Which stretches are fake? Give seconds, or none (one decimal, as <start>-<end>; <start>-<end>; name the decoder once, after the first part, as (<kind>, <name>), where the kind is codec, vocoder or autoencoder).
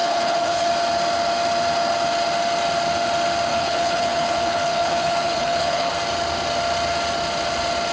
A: 0.0-0.7 (codec, HILCodec); 3.5-5.9